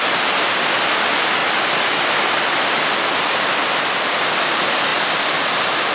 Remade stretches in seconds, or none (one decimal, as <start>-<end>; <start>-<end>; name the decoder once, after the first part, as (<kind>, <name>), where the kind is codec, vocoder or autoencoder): 1.4-3.5 (vocoder, BigVGAN v2)